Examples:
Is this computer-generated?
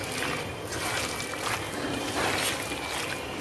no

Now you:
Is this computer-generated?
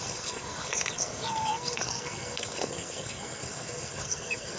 yes